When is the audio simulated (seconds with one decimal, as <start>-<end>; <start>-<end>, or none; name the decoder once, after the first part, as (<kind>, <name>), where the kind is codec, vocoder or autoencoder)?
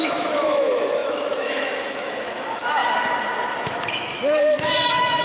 0.0-2.8 (autoencoder, DAC-VAE); 3.7-5.2